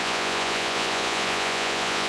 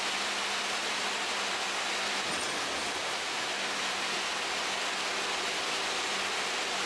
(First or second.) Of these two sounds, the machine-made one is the first